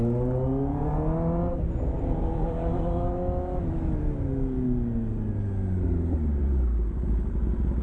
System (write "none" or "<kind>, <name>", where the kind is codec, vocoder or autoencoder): none